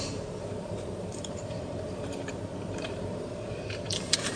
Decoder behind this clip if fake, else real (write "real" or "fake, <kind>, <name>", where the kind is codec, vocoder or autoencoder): fake, vocoder, BigVGAN v2